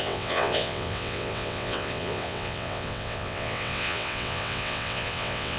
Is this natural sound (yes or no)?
no